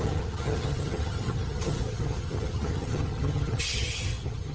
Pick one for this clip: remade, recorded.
remade